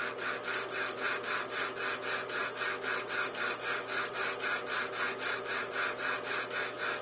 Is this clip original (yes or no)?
yes